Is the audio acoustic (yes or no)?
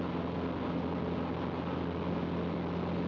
yes